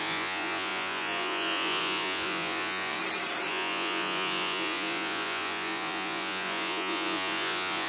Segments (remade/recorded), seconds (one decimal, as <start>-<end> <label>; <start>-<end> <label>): 0.0-3.0 remade; 3.0-3.5 recorded; 3.5-7.9 remade